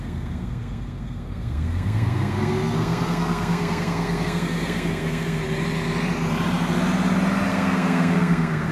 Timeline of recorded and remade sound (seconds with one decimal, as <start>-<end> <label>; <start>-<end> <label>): 0.0-5.4 remade; 5.4-7.5 recorded; 7.5-8.7 remade